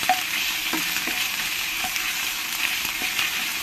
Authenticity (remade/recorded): remade